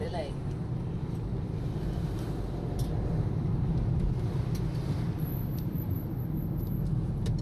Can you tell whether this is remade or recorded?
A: recorded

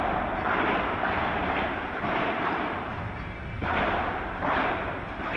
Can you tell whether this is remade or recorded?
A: recorded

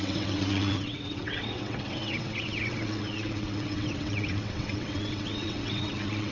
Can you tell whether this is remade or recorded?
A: remade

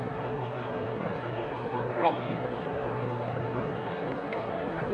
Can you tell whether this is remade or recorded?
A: remade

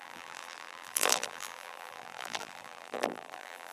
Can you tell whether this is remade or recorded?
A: remade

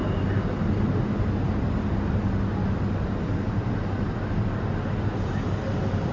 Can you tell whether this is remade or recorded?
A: recorded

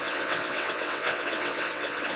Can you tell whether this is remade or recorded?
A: remade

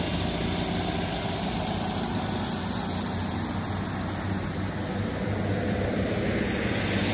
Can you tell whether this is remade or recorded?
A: recorded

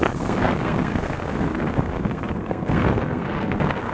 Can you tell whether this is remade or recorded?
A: remade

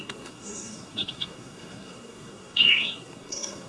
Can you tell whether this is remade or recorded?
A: remade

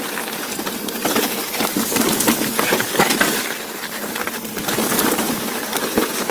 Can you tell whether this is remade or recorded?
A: recorded